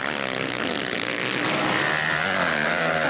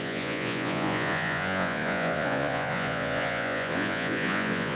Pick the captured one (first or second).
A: first